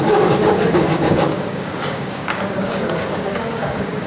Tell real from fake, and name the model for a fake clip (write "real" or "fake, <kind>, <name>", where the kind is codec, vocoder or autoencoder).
fake, codec, DAC